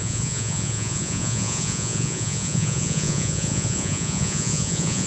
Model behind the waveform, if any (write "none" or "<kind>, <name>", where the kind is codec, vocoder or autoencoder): vocoder, Vocos